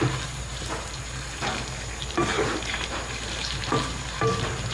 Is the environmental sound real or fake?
fake